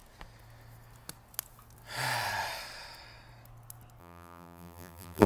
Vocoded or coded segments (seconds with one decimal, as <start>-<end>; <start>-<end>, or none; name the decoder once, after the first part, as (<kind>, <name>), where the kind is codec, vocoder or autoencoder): 4.0-5.3 (vocoder, BigVGAN v2)